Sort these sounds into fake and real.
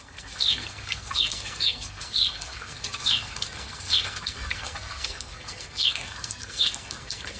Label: fake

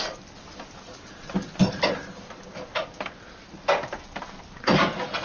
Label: real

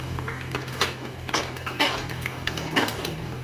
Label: fake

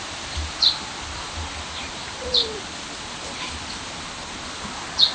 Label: real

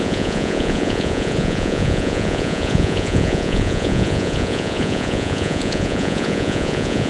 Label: fake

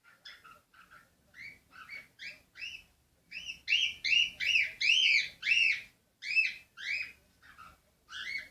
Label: real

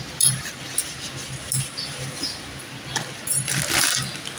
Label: real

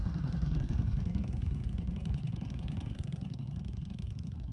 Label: fake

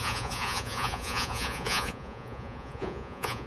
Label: fake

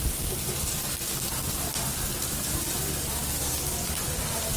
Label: real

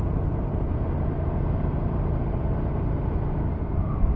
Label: fake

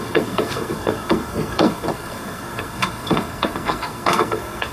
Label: fake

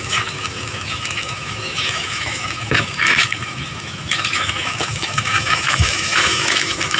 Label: fake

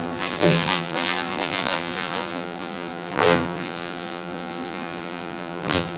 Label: fake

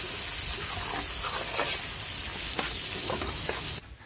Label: real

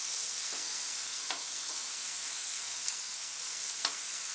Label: fake